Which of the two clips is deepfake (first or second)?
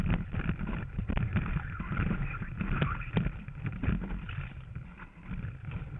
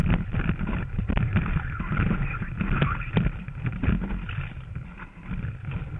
first